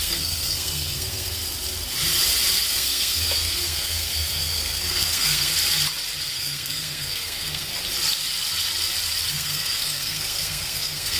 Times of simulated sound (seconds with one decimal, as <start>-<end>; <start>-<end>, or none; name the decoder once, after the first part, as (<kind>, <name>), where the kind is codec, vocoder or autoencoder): 0.0-1.4 (codec, SNAC); 2.7-5.5; 6.3-7.7; 9.3-11.2